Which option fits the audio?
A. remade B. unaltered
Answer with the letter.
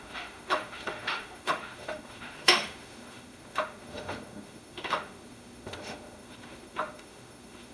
A